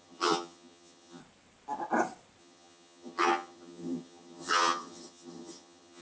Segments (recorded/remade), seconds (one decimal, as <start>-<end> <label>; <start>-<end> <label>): 0.0-1.2 remade; 1.2-2.4 recorded; 2.4-6.0 remade